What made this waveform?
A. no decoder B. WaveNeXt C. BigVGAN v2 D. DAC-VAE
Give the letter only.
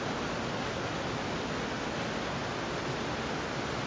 A